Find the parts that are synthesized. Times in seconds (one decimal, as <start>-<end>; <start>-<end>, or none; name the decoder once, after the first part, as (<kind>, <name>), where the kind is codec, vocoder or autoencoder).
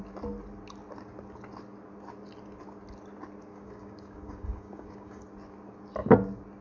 3.5-5.2 (codec, DAC)